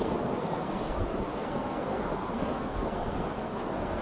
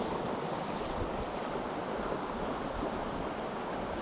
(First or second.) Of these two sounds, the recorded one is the second